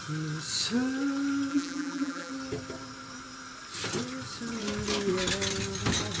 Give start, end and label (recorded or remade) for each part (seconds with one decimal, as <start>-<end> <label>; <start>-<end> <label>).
0.0-1.5 recorded; 1.5-2.3 remade; 2.3-6.2 recorded